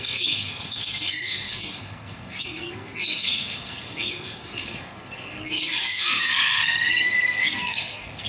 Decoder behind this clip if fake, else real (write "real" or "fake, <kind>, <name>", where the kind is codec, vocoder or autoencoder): fake, codec, SNAC